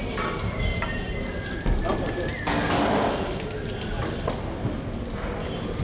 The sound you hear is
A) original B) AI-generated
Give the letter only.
A